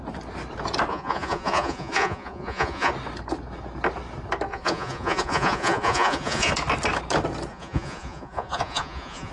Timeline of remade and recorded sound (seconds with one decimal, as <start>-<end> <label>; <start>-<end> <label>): 0.0-0.9 recorded; 0.9-2.9 remade; 2.9-4.5 recorded; 4.5-6.5 remade; 6.5-7.5 recorded; 7.5-9.3 remade